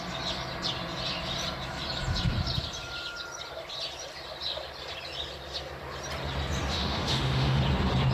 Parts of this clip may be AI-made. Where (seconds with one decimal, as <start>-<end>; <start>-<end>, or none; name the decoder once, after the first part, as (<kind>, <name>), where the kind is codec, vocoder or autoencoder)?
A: 6.7-7.6 (autoencoder, DAC-VAE)